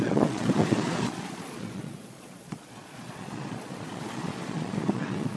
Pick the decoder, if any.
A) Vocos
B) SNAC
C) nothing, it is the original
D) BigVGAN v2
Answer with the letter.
A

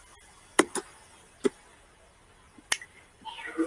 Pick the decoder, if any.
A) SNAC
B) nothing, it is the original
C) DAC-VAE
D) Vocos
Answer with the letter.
B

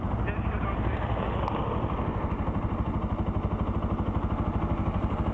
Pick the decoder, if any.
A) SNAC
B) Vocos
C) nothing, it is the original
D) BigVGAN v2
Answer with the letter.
C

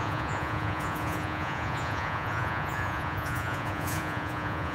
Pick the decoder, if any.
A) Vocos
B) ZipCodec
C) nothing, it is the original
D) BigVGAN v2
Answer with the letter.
A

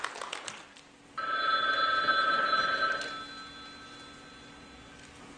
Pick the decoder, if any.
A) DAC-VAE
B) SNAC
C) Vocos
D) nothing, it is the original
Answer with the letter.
D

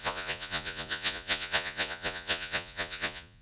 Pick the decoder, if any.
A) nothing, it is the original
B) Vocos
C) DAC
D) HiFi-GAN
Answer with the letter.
B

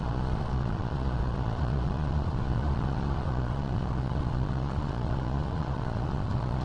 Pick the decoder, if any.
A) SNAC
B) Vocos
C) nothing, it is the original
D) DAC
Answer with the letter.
B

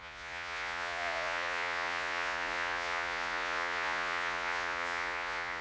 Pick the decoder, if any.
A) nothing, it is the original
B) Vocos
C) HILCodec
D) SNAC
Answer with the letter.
B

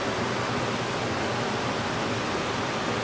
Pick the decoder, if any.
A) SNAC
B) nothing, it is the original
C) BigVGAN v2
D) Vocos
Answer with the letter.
B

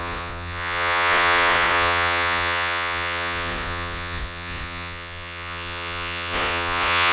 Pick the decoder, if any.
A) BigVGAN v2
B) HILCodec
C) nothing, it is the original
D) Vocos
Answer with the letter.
D